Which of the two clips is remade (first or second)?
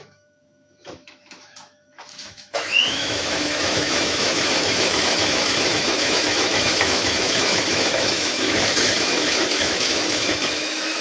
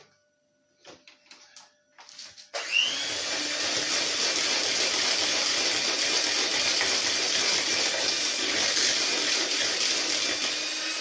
first